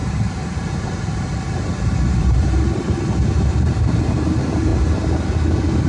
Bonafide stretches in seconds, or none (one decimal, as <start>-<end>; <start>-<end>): 4.7-5.5